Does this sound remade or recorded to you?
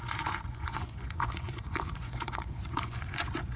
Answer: remade